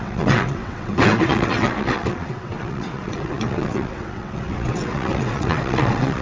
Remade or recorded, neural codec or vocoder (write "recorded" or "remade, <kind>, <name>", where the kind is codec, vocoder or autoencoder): remade, vocoder, WaveNeXt